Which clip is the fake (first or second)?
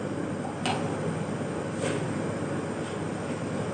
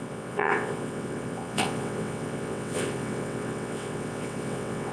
second